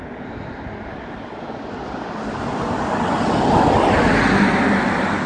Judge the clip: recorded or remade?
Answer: recorded